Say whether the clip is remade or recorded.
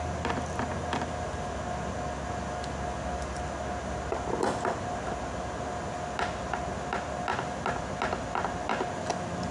recorded